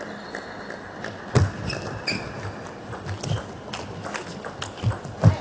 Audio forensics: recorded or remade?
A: recorded